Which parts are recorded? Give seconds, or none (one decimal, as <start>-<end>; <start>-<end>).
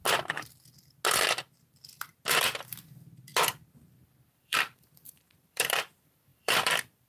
0.0-4.3